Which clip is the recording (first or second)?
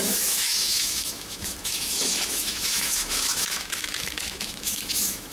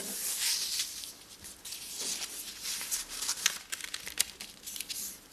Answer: second